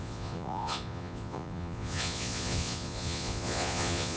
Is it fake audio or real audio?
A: fake